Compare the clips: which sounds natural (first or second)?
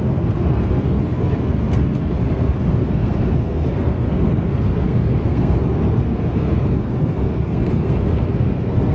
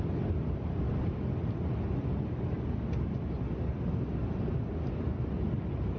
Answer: second